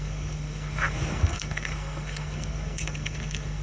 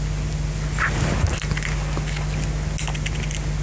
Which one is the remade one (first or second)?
first